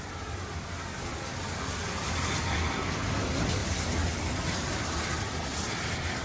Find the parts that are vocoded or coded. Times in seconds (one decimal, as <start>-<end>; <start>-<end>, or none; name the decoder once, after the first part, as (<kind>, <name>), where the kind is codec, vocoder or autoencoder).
none